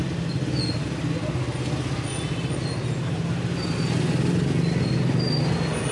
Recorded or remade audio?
recorded